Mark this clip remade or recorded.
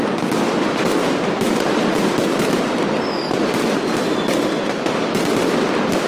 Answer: recorded